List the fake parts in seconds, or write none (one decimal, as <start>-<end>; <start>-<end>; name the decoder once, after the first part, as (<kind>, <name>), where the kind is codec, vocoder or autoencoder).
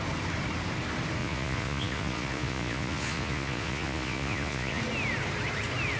1.2-4.8 (vocoder, Vocos)